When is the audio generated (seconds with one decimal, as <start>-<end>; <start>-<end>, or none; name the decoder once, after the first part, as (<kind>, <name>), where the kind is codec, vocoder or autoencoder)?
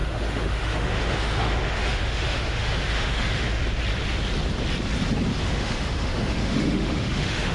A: 0.0-3.6 (autoencoder, DAC-VAE); 5.4-7.5